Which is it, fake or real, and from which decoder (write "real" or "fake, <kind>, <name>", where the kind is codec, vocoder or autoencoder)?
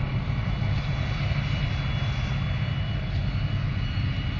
real